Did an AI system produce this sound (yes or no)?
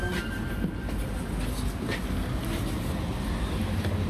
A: no